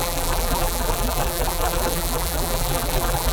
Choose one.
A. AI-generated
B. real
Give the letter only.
A